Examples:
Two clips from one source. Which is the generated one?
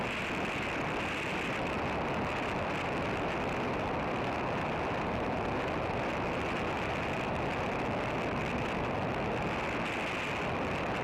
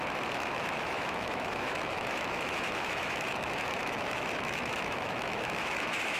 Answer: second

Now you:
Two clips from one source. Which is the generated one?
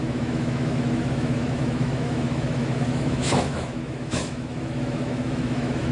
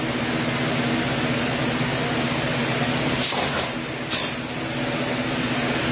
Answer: first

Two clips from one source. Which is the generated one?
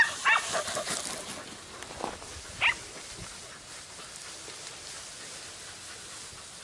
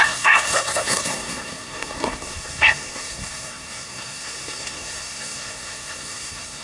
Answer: second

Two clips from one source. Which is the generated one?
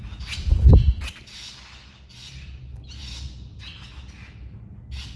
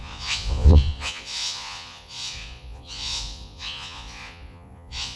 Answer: second